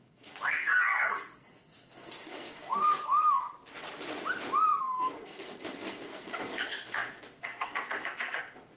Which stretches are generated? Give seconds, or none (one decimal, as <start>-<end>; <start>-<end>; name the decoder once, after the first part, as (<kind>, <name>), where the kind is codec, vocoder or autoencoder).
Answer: 0.0-3.4 (codec, SNAC); 4.8-8.8